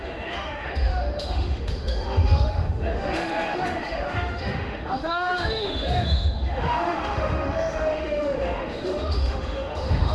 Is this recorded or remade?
remade